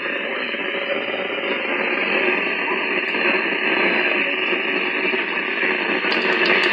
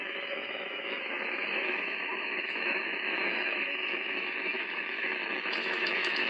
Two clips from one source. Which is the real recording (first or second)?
first